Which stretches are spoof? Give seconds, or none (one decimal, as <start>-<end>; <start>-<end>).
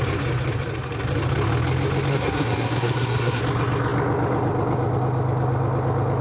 2.1-3.4